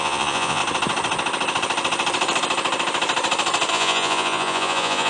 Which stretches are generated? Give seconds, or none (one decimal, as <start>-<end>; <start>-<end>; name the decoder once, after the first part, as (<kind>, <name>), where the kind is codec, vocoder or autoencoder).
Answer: 0.0-0.6 (vocoder, Vocos); 3.7-5.1

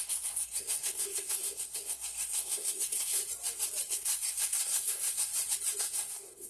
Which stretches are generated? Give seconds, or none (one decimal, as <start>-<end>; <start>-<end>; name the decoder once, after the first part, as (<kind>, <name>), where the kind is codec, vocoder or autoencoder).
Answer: 0.0-3.2 (codec, SNAC); 3.9-5.3; 5.8-6.5

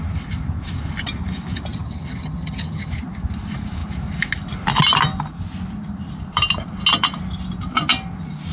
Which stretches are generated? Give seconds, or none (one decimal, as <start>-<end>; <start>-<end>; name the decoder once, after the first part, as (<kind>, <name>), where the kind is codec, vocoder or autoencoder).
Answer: 1.7-2.9 (vocoder, HiFi-GAN)

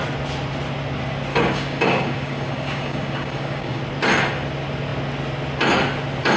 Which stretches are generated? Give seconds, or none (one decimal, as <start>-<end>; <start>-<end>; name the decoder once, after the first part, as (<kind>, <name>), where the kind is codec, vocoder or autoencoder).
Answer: 1.3-3.8 (codec, DAC)

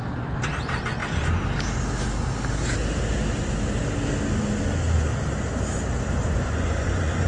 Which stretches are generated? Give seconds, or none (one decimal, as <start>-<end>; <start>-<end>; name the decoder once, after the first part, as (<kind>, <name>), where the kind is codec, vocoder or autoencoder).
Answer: 6.2-7.3 (vocoder, Vocos)

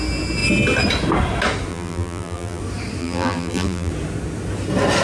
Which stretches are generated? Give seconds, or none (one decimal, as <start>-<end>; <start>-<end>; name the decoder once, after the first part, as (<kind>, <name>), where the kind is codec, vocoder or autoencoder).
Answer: 1.7-2.6 (vocoder, BigVGAN v2); 3.0-3.9

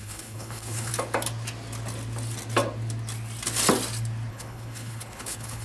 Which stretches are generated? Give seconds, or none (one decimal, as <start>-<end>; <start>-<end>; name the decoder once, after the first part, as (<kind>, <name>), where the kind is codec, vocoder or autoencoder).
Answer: 0.0-0.9 (codec, HILCodec); 4.3-5.6

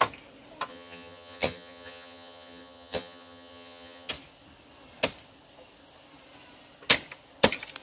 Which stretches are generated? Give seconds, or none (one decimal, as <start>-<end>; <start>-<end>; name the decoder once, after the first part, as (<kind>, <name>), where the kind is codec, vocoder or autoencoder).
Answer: 0.7-4.1 (vocoder, HiFi-GAN)